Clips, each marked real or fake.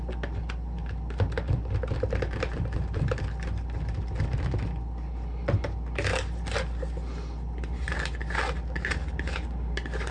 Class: fake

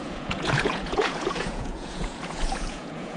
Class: fake